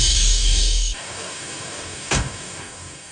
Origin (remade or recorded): remade